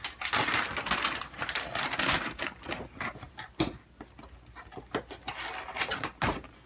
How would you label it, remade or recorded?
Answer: recorded